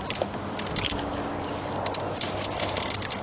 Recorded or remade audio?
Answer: recorded